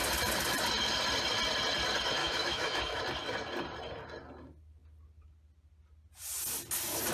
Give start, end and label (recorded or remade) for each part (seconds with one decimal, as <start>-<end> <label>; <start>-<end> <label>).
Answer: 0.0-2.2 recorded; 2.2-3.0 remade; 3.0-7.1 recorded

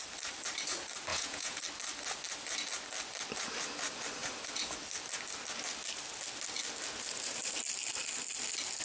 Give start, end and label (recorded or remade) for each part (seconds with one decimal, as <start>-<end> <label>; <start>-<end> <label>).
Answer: 0.0-1.1 recorded; 1.1-1.6 remade; 1.6-8.8 recorded

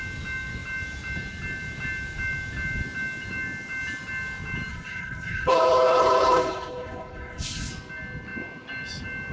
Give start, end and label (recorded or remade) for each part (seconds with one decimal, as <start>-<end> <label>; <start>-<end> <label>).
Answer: 0.0-4.7 recorded; 4.7-7.7 remade; 7.7-9.3 recorded

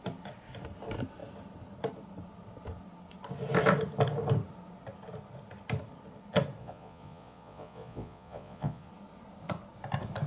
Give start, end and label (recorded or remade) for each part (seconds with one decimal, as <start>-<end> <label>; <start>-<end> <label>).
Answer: 0.0-6.6 recorded; 6.6-8.9 remade; 8.9-10.3 recorded